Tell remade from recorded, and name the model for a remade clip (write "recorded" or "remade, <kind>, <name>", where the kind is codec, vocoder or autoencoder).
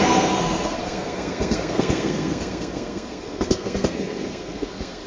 remade, codec, SNAC